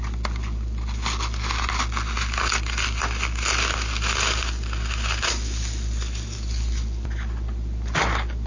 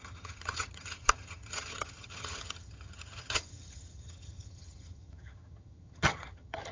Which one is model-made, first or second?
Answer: second